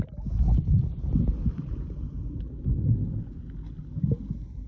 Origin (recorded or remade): recorded